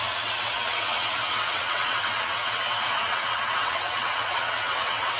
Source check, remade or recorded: remade